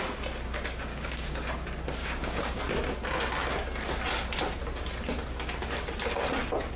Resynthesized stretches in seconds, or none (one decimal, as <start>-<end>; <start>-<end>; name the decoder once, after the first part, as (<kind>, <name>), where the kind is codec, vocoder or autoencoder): 0.9-1.5 (codec, DAC); 2.0-2.6